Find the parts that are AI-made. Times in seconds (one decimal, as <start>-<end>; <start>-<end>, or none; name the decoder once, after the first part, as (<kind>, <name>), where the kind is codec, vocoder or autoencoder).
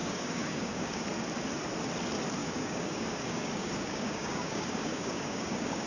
0.0-1.0 (codec, DAC); 2.4-5.9